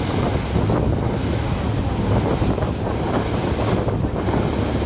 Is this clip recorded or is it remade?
recorded